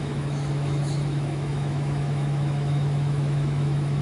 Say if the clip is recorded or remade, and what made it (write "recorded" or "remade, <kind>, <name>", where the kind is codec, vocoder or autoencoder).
remade, autoencoder, DAC-VAE